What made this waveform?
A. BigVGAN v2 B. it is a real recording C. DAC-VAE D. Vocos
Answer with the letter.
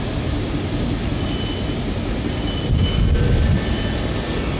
B